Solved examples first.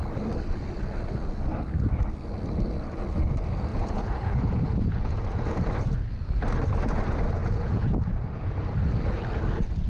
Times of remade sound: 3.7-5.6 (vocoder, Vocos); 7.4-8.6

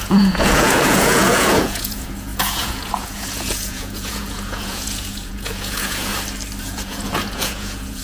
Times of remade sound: 0.0-6.1 (vocoder, Vocos); 6.6-8.0

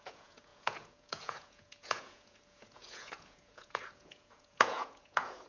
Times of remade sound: 0.0-5.5 (vocoder, Vocos)

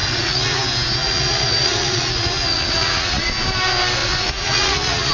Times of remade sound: 0.0-0.6 (vocoder, Vocos); 1.0-3.3; 4.0-5.1

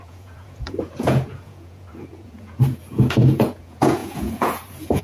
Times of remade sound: 0.0-5.0 (vocoder, Vocos)

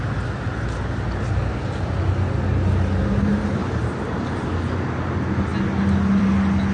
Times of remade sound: none

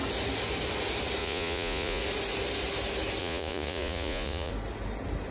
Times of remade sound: 1.2-2.0 (vocoder, Vocos); 3.2-4.5

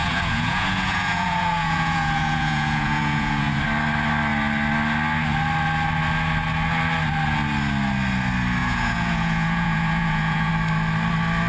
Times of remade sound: 0.0-3.6 (vocoder, Vocos); 8.6-10.5